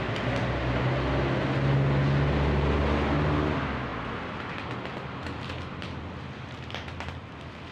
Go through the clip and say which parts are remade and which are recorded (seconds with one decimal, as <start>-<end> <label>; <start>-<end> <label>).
0.0-7.7 recorded